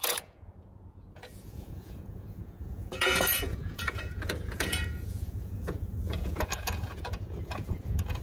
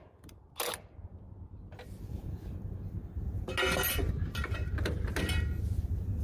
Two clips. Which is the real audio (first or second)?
second